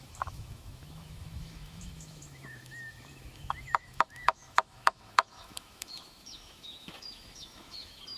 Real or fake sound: fake